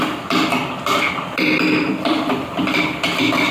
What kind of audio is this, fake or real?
fake